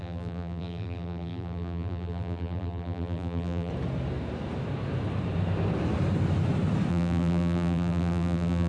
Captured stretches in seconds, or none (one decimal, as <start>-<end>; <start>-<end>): 3.7-6.9